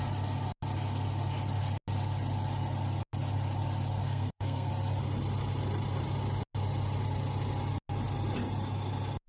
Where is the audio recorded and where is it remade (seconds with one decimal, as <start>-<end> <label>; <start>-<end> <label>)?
0.0-4.0 recorded; 4.0-4.7 remade; 4.7-9.3 recorded